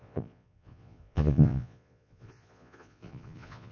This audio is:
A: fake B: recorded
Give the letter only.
A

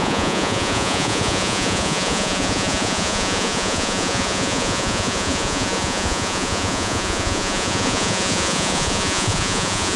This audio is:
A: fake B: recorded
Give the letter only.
A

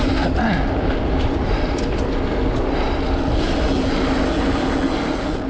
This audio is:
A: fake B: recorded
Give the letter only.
B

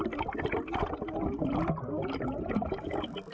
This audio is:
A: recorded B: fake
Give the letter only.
A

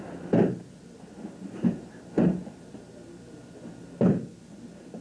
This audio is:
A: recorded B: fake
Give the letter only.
A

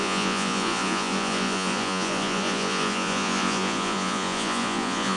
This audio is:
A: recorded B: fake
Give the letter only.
B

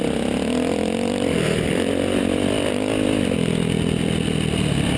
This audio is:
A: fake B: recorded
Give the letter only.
B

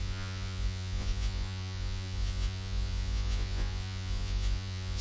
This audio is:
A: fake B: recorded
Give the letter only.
A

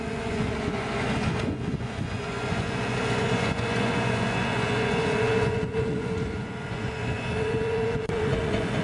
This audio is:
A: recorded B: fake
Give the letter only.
B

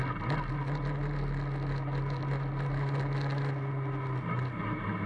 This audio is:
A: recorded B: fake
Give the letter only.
A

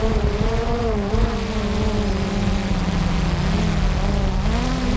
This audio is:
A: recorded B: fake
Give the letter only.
A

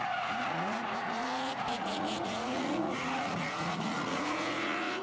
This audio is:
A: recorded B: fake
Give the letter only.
B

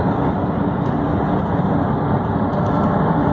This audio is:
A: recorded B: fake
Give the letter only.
A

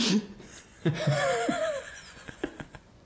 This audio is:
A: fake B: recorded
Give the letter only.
A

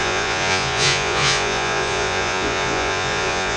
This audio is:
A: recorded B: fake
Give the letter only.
B